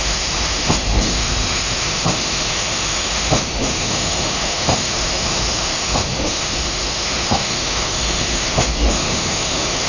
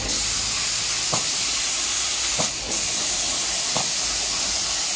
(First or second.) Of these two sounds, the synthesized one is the first